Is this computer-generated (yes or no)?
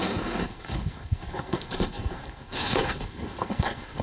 yes